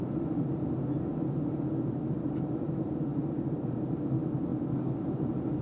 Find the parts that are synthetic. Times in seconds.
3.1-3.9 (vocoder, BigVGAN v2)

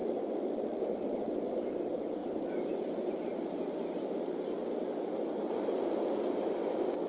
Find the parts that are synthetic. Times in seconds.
0.8-7.1 (vocoder, BigVGAN v2)